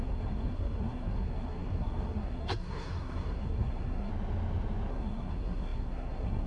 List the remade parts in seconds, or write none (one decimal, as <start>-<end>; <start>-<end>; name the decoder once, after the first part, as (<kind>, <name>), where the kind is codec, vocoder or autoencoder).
0.0-4.1 (codec, SNAC); 4.9-6.5